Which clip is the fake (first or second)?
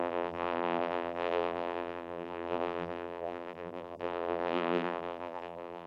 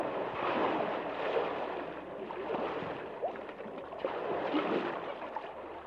first